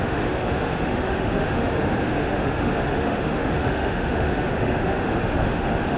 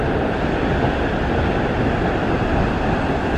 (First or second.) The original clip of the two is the second